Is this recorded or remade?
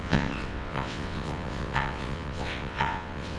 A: remade